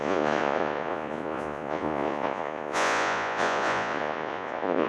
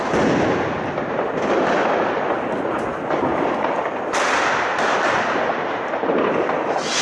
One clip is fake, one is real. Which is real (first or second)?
second